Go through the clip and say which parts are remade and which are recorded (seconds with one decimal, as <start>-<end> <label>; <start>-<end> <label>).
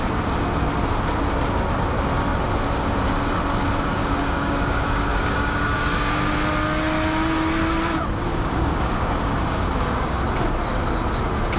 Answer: 0.0-4.0 recorded; 4.0-6.2 remade; 6.2-8.3 recorded; 8.3-10.2 remade; 10.2-11.6 recorded